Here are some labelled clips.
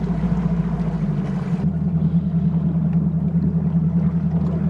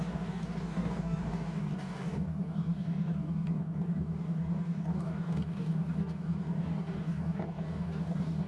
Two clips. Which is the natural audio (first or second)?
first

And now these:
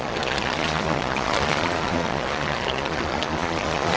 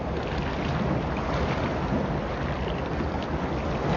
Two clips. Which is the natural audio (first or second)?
second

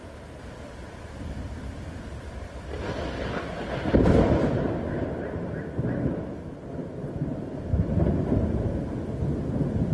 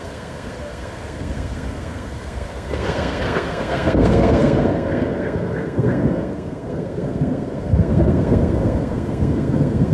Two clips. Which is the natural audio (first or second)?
first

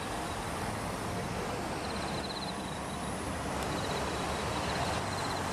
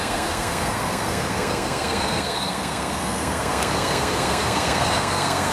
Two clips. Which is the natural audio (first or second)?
first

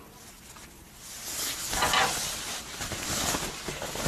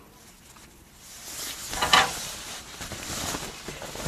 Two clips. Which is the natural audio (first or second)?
first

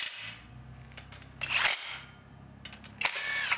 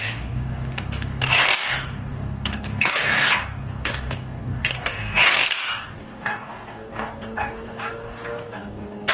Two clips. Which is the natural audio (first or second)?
first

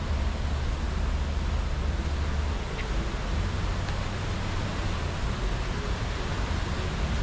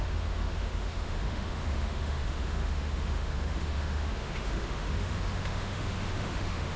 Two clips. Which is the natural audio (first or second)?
first